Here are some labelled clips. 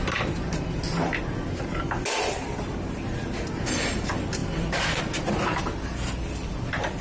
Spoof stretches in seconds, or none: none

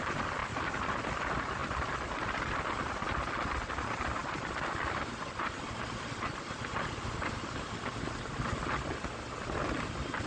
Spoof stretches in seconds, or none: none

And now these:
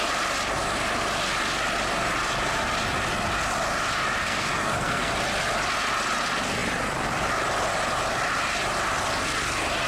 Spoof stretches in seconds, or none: 4.2-5.1

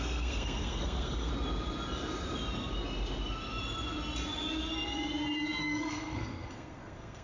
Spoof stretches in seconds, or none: 0.0-1.3; 5.6-7.2

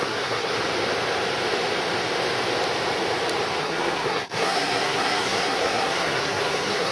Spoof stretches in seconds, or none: 0.0-0.5; 3.6-6.9

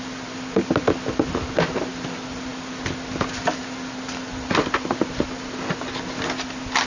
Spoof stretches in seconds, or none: none

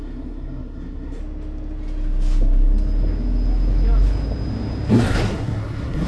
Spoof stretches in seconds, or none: 0.0-1.2; 4.9-6.1